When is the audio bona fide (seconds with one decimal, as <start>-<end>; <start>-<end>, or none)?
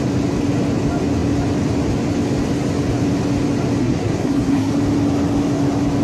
0.0-3.8; 4.7-6.0